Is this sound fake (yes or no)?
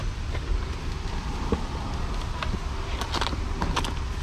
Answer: no